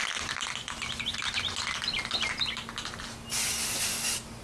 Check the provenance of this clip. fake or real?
real